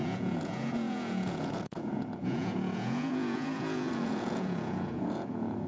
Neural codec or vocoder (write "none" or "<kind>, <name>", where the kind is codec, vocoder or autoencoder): vocoder, Vocos